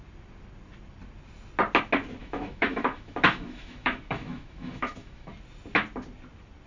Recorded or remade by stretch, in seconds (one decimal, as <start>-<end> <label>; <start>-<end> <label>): 0.0-2.2 recorded; 2.2-5.3 remade; 5.3-6.7 recorded